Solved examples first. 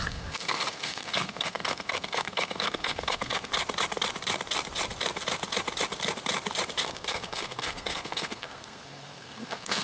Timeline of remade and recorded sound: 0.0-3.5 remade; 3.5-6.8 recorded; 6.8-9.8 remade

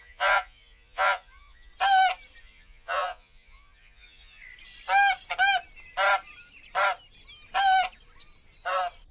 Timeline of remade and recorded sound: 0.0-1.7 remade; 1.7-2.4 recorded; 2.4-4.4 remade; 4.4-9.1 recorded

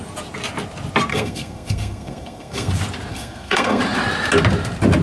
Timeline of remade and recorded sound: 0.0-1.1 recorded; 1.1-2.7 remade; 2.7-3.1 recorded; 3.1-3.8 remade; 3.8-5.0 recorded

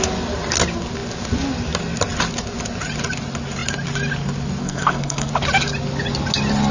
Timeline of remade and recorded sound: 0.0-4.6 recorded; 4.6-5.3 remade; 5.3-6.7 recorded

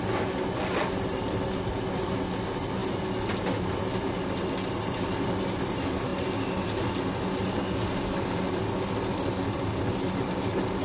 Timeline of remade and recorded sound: 0.0-10.8 recorded

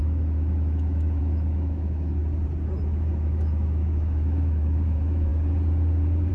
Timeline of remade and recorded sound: 0.0-2.2 remade; 2.2-2.9 recorded; 2.9-5.3 remade; 5.3-6.3 recorded

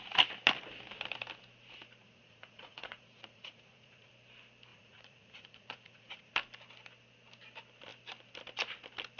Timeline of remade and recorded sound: 0.0-2.0 recorded; 2.0-4.1 remade; 4.1-4.7 recorded; 4.7-6.3 remade; 6.3-9.2 recorded